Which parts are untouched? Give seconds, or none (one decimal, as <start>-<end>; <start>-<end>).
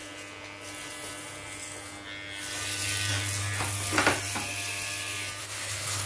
0.0-5.4